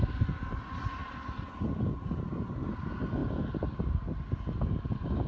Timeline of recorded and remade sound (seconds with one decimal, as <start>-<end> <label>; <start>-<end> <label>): 0.0-5.3 recorded